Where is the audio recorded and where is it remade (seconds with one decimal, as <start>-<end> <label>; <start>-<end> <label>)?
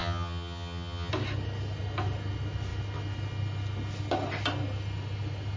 0.0-1.1 remade; 1.1-5.6 recorded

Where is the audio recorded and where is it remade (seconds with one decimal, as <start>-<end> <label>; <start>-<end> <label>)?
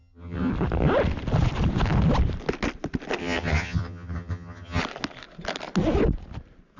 0.0-0.5 remade; 0.5-3.2 recorded; 3.2-4.8 remade; 4.8-6.8 recorded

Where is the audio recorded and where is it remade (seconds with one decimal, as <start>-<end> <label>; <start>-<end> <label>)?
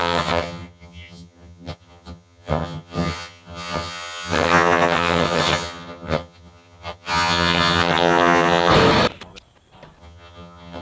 0.0-8.7 remade; 8.7-10.0 recorded; 10.0-10.8 remade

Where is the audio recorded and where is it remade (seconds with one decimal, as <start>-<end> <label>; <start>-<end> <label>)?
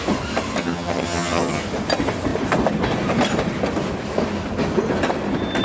0.0-0.6 recorded; 0.6-1.6 remade; 1.6-5.6 recorded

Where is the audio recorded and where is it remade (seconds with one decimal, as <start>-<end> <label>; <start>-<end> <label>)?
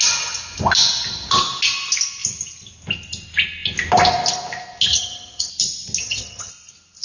0.0-4.9 recorded; 4.9-5.5 remade; 5.5-6.0 recorded; 6.0-6.5 remade; 6.5-7.0 recorded